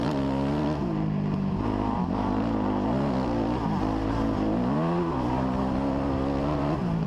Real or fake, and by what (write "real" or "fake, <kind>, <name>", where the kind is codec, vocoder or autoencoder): real